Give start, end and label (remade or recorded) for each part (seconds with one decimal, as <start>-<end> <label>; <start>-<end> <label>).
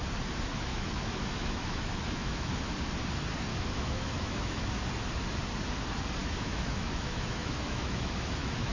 0.0-0.7 recorded; 0.7-2.5 remade; 2.5-3.5 recorded; 3.5-4.7 remade; 4.7-6.2 recorded; 6.2-8.7 remade